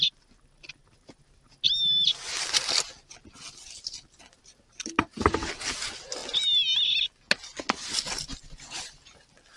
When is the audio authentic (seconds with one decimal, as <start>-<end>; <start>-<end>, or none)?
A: 0.0-9.6